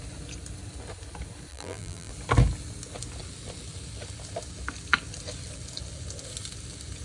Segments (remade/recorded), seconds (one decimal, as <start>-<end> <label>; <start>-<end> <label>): 0.0-1.5 recorded; 1.5-2.1 remade; 2.1-7.0 recorded